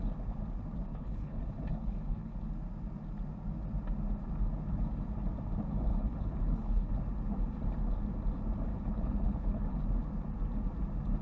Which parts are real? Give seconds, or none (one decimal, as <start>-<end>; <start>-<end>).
0.0-0.9; 1.4-1.8; 2.3-5.9; 6.9-8.7; 9.8-11.2